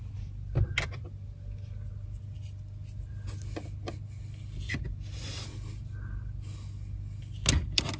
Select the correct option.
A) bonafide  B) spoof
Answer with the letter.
A